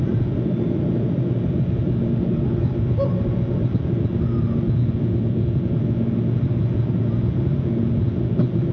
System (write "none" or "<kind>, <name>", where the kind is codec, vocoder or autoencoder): none